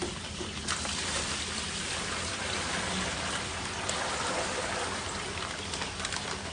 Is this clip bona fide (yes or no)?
no